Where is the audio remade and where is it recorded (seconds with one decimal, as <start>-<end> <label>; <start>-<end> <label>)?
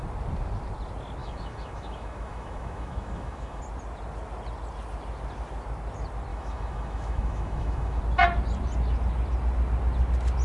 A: 0.0-1.2 recorded; 1.2-3.6 remade; 3.6-6.3 recorded; 6.3-8.0 remade; 8.0-10.4 recorded